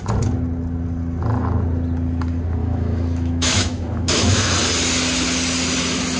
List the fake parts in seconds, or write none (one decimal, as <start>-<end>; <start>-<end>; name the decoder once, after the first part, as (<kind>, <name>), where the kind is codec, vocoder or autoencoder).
2.6-4.5 (autoencoder, DAC-VAE)